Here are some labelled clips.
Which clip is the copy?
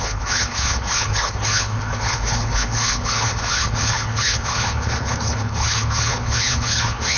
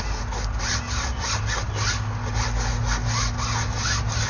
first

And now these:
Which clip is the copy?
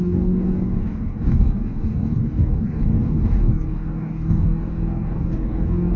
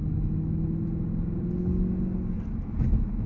first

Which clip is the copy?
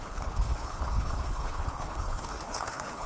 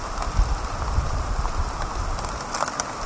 first